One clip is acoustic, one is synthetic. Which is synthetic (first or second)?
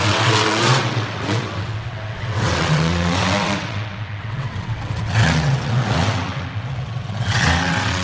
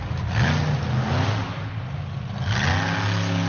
first